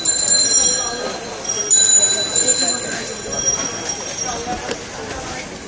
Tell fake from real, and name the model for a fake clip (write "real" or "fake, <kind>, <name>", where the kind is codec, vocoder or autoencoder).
real